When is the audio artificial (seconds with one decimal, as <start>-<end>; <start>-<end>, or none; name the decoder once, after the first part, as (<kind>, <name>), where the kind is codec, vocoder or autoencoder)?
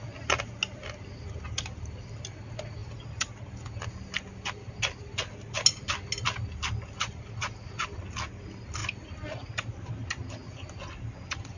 2.8-3.9 (vocoder, BigVGAN v2)